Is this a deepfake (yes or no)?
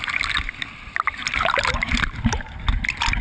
no